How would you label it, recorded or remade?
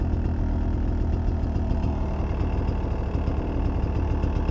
recorded